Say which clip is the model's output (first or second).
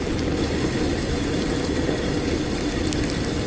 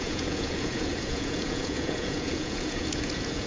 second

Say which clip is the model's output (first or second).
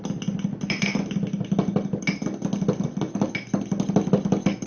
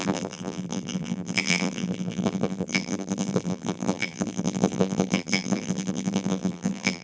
second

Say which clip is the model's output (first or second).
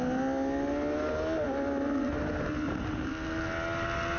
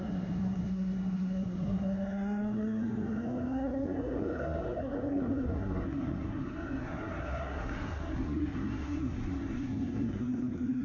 second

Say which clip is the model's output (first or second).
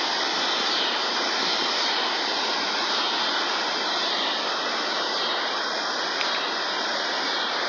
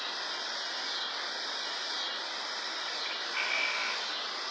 first